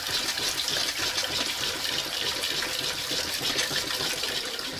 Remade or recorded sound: recorded